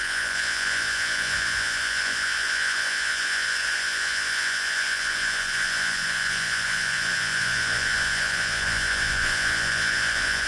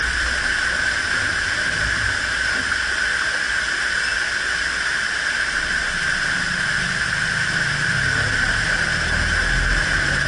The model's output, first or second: first